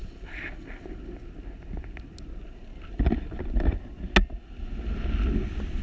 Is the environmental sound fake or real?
real